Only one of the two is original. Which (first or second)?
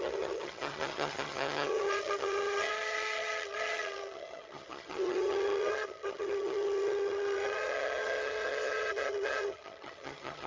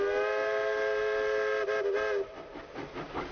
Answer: second